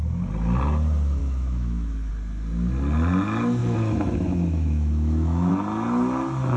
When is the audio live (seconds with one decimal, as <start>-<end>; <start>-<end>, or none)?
0.0-1.2; 2.1-3.6; 5.5-6.6